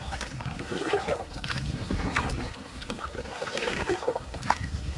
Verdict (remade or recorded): remade